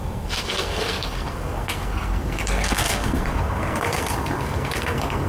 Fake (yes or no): yes